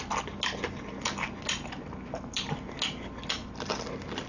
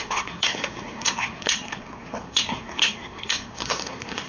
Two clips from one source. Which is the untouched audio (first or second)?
first